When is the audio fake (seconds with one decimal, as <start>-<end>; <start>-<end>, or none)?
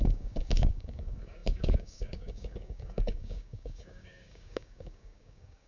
0.0-5.7